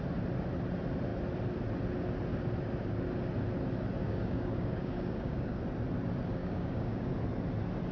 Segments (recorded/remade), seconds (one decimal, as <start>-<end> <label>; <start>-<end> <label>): 0.0-4.0 recorded; 4.0-5.6 remade; 5.6-6.4 recorded; 6.4-7.1 remade; 7.1-7.9 recorded